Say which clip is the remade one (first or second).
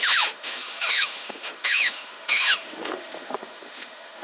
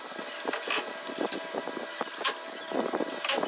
first